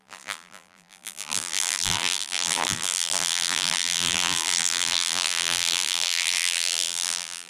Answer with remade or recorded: remade